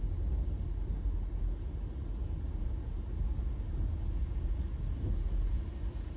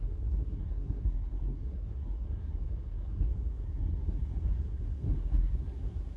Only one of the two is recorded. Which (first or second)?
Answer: first